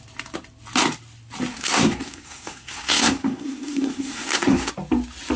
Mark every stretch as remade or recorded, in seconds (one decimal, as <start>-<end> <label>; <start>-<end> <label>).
0.0-1.5 recorded; 1.5-4.7 remade; 4.7-5.4 recorded